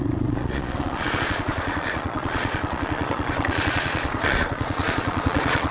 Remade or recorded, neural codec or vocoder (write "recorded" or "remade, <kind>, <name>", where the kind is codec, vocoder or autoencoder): remade, vocoder, Vocos